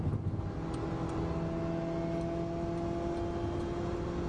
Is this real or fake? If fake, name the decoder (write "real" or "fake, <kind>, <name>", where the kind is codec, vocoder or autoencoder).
real